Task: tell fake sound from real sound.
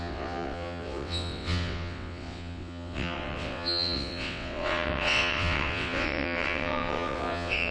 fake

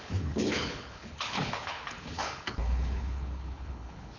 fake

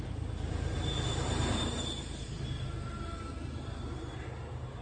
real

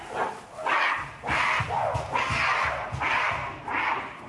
real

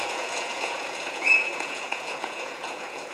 fake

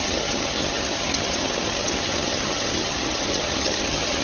fake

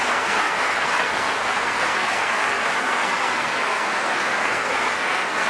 fake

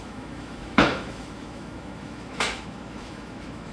fake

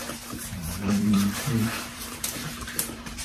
fake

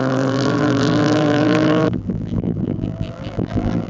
fake